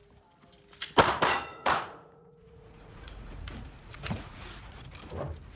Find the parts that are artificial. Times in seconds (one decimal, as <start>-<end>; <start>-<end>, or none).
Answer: 1.5-4.9